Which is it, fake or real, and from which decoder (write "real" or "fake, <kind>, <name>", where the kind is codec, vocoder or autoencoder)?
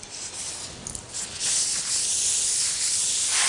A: real